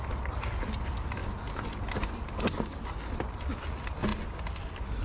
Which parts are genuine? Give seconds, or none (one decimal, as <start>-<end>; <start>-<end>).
0.0-5.0